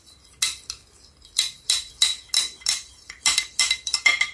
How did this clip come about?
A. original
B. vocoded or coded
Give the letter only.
A